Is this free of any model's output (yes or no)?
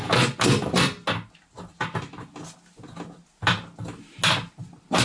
yes